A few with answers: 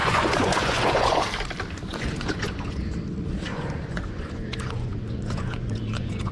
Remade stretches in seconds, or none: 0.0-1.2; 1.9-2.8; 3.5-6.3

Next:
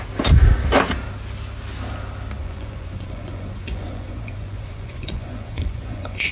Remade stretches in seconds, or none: 2.4-6.3